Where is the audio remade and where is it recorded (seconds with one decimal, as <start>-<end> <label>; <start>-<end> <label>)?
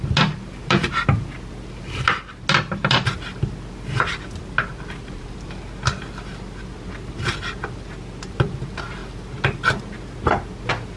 0.0-11.0 recorded